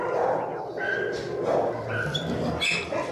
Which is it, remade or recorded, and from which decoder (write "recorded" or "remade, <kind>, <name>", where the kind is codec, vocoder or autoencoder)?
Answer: recorded